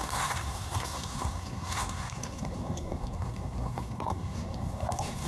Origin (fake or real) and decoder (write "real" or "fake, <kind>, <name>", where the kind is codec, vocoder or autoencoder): fake, codec, SNAC